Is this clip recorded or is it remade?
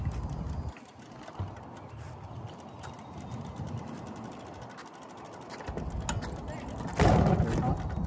recorded